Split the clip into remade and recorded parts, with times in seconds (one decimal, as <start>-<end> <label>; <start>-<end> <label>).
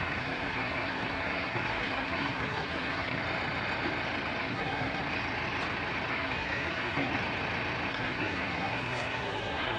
0.0-3.2 remade; 3.2-4.4 recorded; 4.4-5.0 remade; 5.0-6.1 recorded; 6.1-7.1 remade; 7.1-7.9 recorded; 7.9-9.8 remade